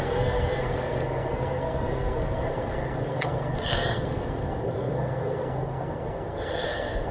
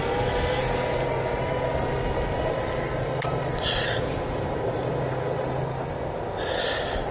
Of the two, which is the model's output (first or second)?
first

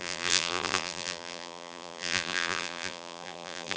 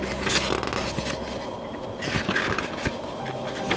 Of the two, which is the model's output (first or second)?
first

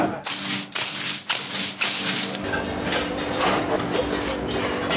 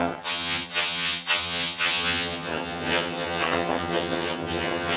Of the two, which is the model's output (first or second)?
second